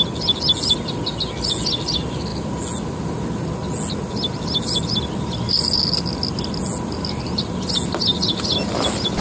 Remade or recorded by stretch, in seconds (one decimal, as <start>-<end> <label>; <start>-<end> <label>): 0.0-9.2 recorded